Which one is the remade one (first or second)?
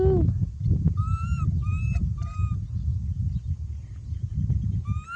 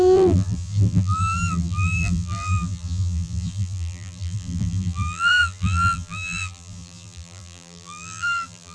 second